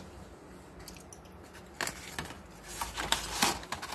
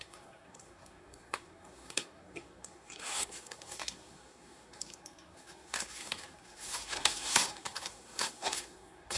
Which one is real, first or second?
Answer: first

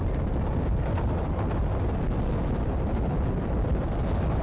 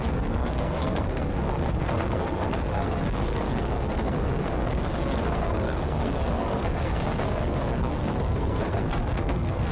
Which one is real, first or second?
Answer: first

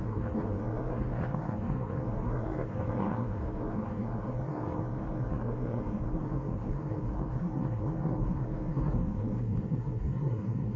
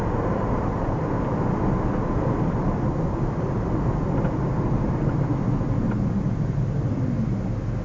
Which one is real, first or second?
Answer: second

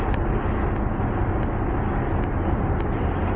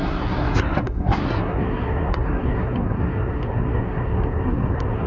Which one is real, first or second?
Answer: first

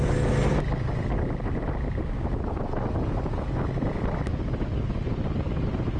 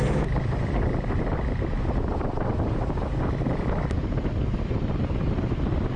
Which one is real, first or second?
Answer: first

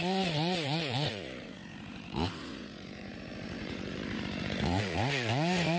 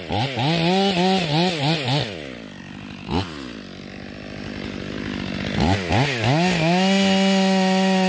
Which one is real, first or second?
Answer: second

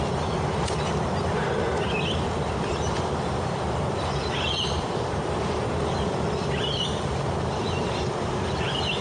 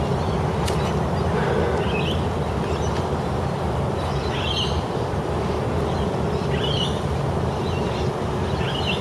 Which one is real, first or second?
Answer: second